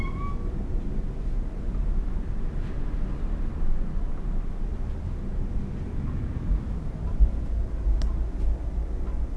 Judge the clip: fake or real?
real